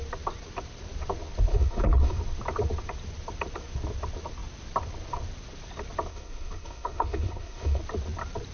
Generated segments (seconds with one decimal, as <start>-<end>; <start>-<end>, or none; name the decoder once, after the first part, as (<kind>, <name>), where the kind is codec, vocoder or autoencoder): 1.5-2.2 (codec, HILCodec); 6.1-7.8